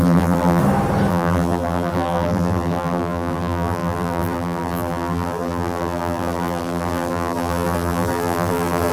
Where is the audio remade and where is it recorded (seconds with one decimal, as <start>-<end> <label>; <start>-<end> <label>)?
0.0-0.6 remade; 0.6-1.1 recorded; 1.1-8.9 remade